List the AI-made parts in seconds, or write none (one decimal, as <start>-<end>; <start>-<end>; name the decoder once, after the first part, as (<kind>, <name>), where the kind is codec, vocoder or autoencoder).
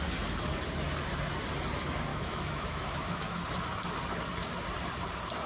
2.1-3.4 (autoencoder, DAC-VAE)